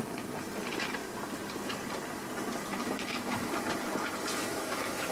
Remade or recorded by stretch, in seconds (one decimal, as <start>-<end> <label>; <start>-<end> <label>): 0.0-2.7 recorded; 2.7-3.5 remade; 3.5-4.5 recorded; 4.5-5.1 remade